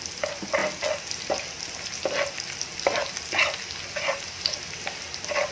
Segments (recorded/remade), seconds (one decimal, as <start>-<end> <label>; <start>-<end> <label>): 0.0-5.5 recorded

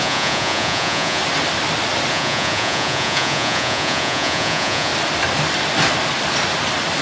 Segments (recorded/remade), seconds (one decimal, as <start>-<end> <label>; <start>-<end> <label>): 0.0-1.2 remade; 1.2-2.1 recorded; 2.1-4.9 remade; 4.9-7.0 recorded

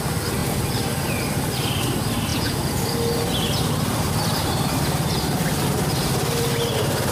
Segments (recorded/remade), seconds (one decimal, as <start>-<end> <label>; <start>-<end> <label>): 0.0-2.3 recorded; 2.3-2.8 remade; 2.8-7.1 recorded

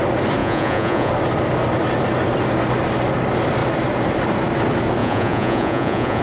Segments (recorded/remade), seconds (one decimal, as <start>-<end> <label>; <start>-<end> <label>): 0.0-0.4 recorded; 0.4-1.1 remade; 1.1-5.0 recorded; 5.0-6.2 remade

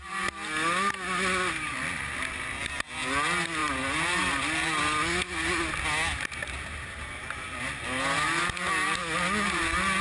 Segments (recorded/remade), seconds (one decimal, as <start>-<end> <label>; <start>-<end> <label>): 0.0-10.0 recorded

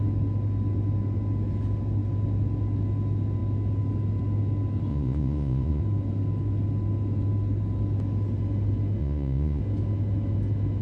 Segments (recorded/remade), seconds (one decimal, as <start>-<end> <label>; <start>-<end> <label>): 0.0-4.9 recorded; 4.9-5.8 remade; 5.8-9.0 recorded; 9.0-9.6 remade; 9.6-10.8 recorded

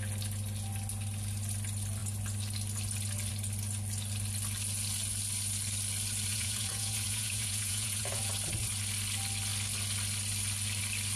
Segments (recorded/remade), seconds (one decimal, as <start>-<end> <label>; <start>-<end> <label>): 0.0-6.3 recorded; 6.3-8.3 remade; 8.3-11.2 recorded